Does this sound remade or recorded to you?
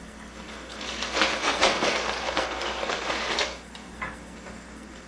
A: remade